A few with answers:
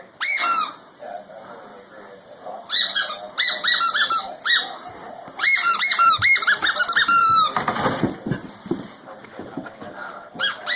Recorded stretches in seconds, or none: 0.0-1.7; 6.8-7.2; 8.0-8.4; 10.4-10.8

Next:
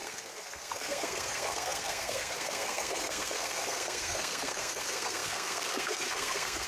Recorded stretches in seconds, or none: none

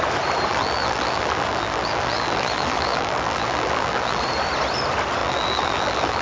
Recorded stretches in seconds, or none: 0.0-0.5; 4.2-5.2

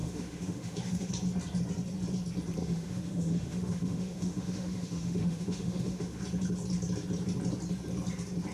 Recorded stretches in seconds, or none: 1.1-2.6; 6.2-8.5

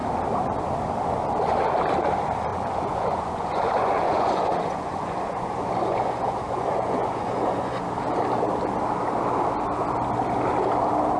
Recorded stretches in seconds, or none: 0.0-2.5; 7.8-11.2